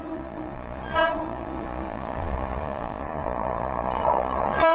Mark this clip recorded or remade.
remade